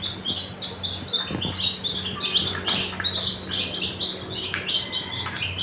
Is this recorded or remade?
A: recorded